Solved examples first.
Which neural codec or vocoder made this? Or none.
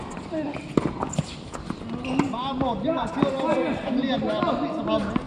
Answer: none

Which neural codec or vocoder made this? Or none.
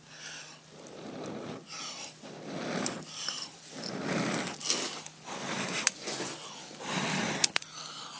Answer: none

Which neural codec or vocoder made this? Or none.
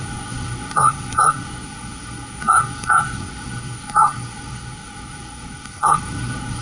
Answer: codec, SNAC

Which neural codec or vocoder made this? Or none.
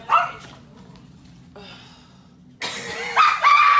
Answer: none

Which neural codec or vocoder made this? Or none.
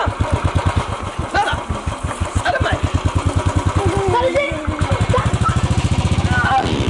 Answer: none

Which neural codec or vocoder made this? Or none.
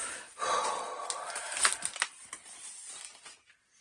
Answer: none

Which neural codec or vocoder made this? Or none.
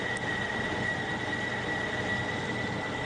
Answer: none